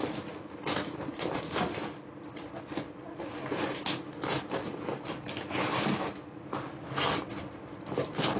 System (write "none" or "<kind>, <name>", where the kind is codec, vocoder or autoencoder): none